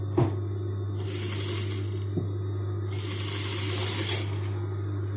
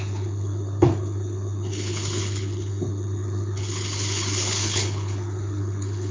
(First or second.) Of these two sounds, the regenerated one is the second